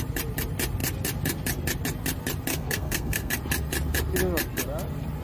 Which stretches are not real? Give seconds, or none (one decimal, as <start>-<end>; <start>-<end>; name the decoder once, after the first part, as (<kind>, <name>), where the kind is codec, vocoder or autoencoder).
2.5-3.3 (codec, SNAC)